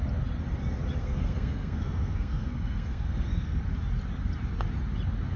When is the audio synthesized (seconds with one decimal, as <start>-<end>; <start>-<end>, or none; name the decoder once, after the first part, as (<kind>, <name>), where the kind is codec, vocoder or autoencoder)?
1.0-3.6 (codec, SNAC)